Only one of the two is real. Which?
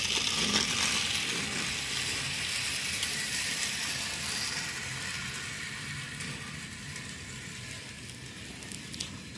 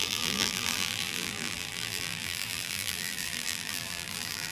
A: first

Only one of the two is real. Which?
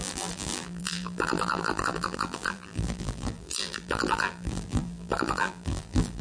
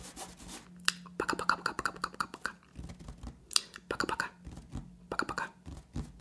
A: second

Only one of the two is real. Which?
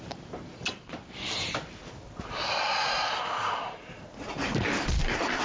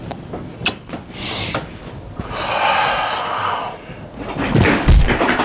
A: second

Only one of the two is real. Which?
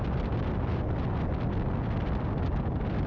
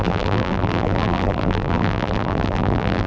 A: first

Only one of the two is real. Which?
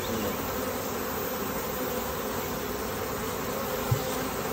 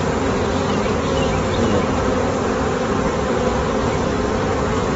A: first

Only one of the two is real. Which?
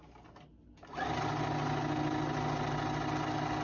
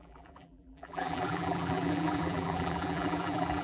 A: first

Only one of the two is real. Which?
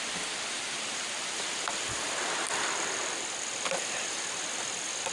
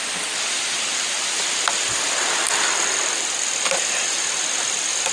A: second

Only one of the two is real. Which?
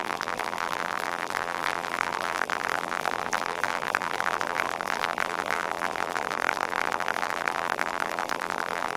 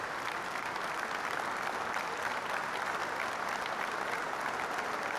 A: second